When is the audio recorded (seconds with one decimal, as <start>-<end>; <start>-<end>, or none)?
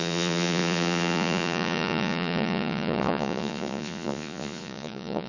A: none